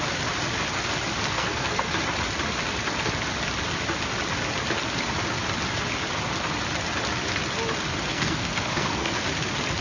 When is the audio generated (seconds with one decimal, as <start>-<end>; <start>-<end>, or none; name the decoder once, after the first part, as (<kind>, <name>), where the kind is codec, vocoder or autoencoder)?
1.3-1.9 (codec, SNAC); 8.1-9.1